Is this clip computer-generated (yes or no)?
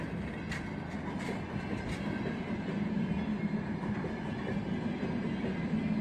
no